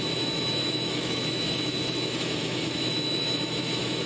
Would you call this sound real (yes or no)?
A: no